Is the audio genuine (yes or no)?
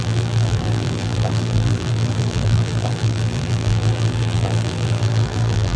no